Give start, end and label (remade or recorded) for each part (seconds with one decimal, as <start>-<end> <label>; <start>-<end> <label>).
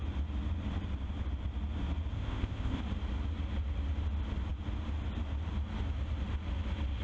0.0-2.1 recorded; 2.1-2.8 remade; 2.8-7.0 recorded